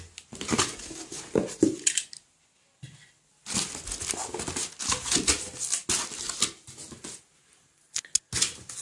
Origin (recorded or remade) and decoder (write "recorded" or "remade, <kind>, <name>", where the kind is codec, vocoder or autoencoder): recorded